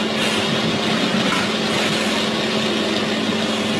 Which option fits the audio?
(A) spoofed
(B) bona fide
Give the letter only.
B